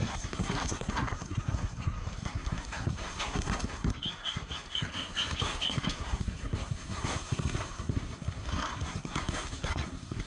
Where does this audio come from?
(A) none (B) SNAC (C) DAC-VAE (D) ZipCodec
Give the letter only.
B